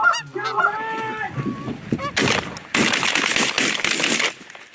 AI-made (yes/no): no